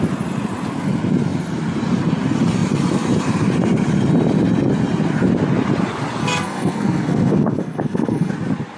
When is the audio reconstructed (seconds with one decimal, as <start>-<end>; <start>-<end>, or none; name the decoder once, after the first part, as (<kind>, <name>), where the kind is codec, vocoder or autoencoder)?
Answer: 6.2-8.3 (codec, SNAC)